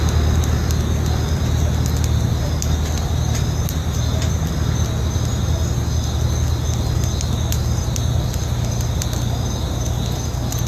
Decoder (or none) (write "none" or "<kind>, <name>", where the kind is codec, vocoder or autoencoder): none